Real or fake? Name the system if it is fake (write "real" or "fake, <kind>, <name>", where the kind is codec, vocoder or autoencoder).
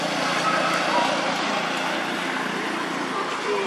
real